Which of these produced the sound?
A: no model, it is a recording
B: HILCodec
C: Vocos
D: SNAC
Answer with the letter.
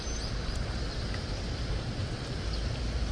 A